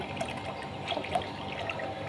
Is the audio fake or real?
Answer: real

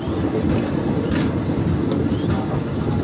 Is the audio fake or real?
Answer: real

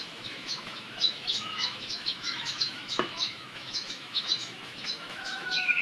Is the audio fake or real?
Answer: fake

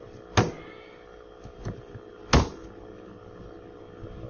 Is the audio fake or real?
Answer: real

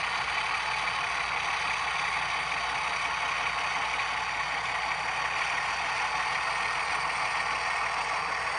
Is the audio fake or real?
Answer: real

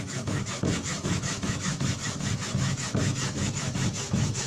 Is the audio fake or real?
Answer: fake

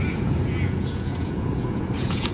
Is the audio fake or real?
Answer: fake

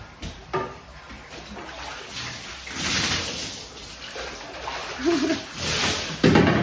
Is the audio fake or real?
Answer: real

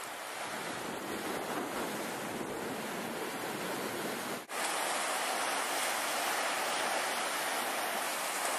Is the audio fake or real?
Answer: real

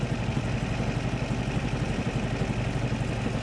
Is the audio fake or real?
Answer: real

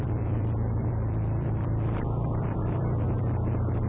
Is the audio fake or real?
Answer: fake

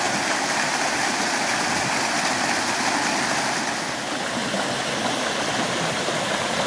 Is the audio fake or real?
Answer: real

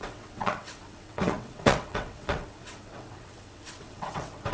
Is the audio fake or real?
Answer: fake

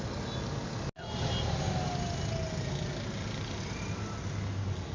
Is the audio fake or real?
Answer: real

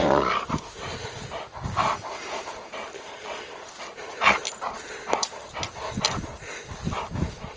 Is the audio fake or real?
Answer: real